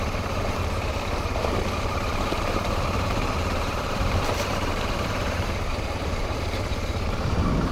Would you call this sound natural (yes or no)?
no